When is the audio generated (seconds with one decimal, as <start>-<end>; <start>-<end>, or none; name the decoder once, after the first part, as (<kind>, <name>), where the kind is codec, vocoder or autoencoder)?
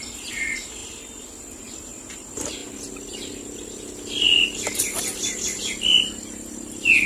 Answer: 0.0-7.1 (vocoder, BigVGAN v2)